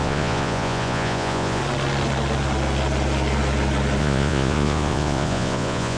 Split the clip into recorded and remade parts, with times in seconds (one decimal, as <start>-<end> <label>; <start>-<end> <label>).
0.0-1.6 remade; 1.6-4.0 recorded; 4.0-6.0 remade